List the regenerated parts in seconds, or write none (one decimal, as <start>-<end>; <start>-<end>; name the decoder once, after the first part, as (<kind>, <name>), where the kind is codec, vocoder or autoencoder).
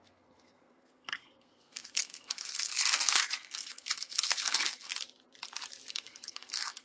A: 0.0-4.9 (codec, SNAC); 5.9-6.8